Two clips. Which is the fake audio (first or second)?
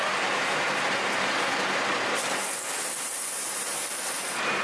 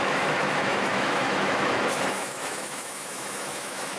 second